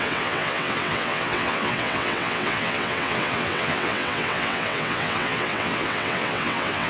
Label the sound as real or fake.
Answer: fake